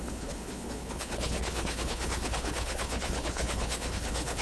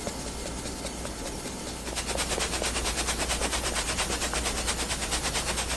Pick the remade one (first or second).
first